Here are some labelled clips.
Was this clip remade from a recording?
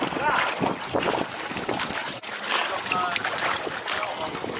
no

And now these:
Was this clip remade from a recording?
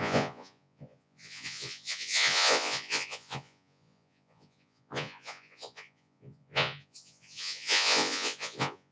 yes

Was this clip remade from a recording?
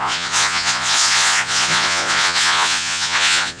yes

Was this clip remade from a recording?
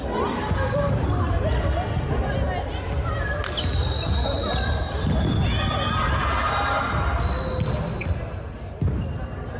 no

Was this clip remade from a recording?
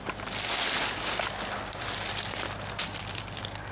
no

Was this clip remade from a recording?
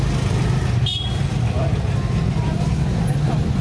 no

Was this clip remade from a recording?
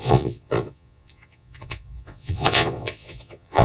yes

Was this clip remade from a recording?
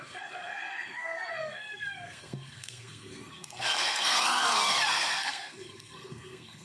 yes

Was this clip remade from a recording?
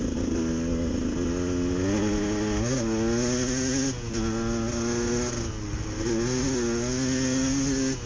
no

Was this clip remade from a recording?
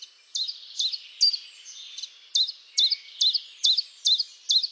no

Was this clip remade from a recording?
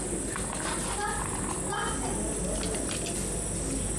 no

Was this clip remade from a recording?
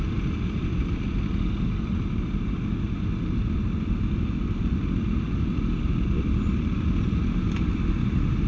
no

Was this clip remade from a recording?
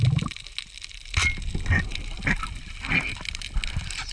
no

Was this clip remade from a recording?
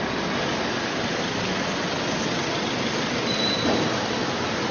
no